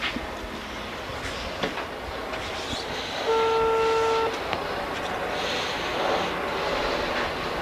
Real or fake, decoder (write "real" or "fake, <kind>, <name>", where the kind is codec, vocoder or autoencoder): real